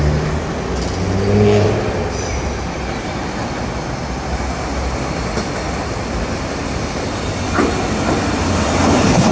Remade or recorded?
recorded